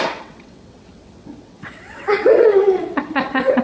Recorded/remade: remade